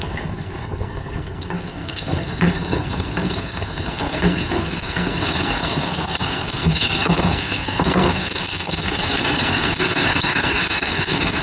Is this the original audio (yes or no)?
no